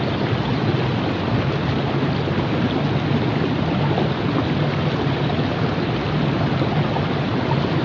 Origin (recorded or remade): recorded